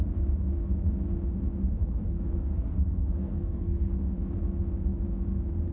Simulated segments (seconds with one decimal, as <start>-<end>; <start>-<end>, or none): 1.8-3.9